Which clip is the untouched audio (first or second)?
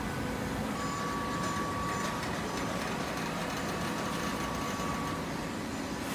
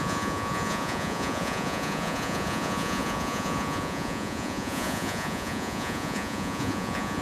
first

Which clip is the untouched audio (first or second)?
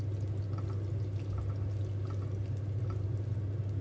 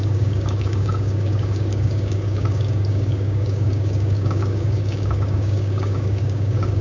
first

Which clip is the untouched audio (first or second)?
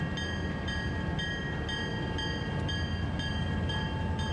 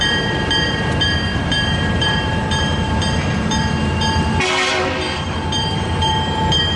first